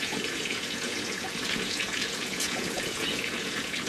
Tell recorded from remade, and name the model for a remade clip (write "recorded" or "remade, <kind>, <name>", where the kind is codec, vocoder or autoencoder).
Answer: remade, vocoder, Vocos